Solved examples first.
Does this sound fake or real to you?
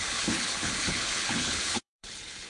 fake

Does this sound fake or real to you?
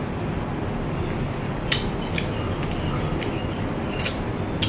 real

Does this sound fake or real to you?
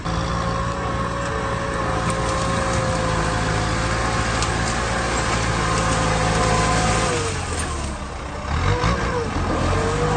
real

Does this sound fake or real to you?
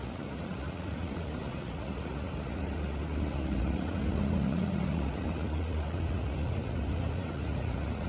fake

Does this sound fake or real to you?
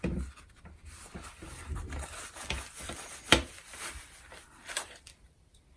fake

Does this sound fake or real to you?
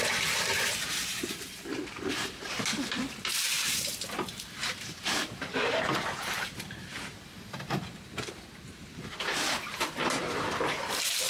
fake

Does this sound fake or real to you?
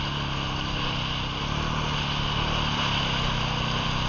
real